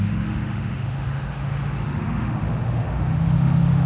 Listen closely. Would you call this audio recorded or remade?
remade